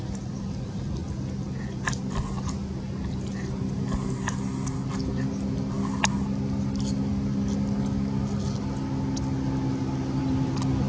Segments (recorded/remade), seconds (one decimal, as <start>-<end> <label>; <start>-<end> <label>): 0.0-10.9 recorded